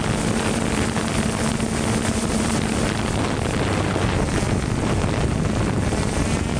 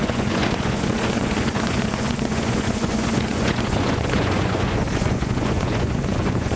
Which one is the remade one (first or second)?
second